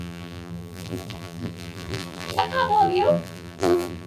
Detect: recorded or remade remade